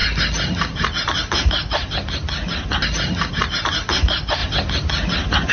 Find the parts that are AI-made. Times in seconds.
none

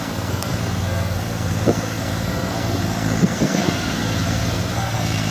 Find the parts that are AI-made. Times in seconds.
0.0-5.3 (codec, SNAC)

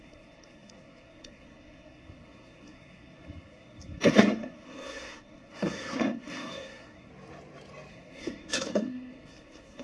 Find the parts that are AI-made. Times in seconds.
0.0-7.1 (codec, SNAC); 7.9-9.8